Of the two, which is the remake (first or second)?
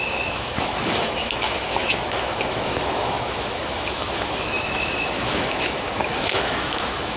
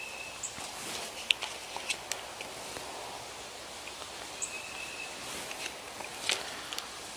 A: first